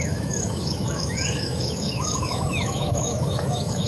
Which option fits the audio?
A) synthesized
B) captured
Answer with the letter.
A